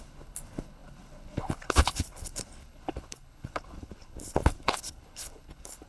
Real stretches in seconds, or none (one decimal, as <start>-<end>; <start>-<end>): none